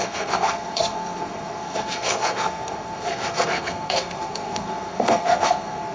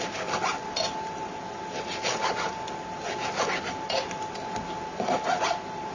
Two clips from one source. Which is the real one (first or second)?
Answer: second